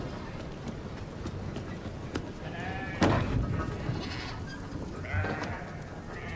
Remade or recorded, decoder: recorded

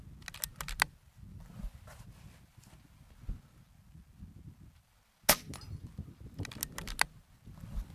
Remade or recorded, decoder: recorded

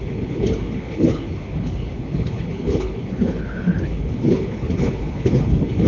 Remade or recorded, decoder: remade, codec, HILCodec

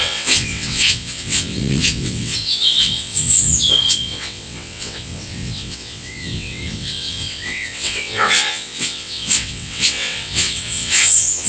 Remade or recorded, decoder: remade, vocoder, WaveNeXt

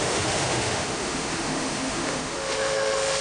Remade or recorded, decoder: remade, autoencoder, DAC-VAE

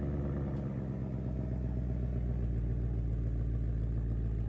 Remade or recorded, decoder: recorded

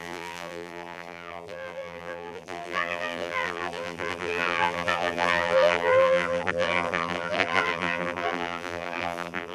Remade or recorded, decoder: remade, vocoder, BigVGAN v2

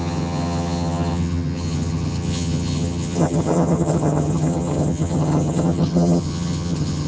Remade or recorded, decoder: remade, vocoder, HiFi-GAN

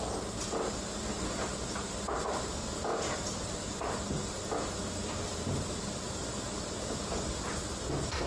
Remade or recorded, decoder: recorded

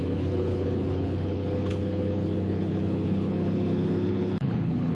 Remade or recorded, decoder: remade, codec, HILCodec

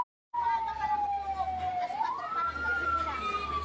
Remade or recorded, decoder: recorded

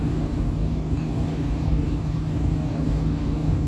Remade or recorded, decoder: remade, codec, DAC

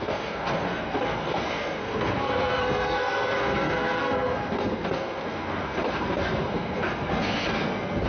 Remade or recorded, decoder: remade, codec, SNAC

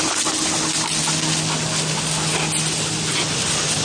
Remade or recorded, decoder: recorded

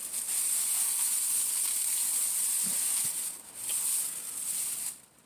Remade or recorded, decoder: recorded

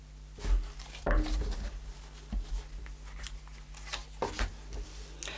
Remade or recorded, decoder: recorded